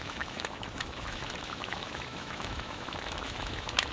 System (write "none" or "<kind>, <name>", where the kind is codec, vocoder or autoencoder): autoencoder, DAC-VAE